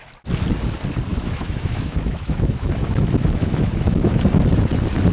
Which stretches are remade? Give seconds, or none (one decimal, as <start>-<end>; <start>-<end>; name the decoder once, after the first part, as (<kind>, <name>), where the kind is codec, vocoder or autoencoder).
1.1-4.2 (autoencoder, DAC-VAE)